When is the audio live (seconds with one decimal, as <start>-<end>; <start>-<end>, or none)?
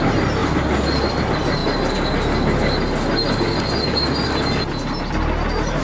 0.0-5.8